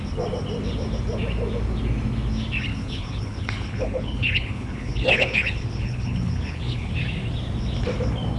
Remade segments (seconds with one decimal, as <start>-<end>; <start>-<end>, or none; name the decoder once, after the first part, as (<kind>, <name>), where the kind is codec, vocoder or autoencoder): 2.7-6.9 (codec, HILCodec)